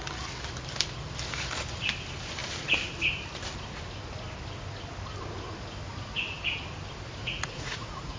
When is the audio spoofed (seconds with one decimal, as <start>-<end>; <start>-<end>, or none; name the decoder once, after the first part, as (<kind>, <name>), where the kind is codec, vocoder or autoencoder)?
7.2-8.2 (vocoder, Vocos)